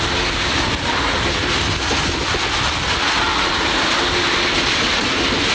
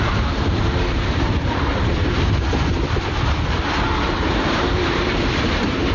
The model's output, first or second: second